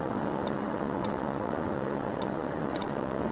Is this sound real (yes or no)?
no